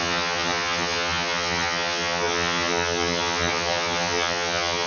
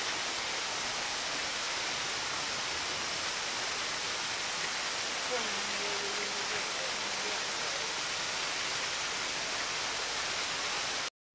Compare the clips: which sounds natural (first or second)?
second